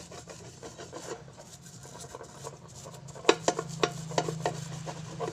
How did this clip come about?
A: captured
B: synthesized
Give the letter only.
A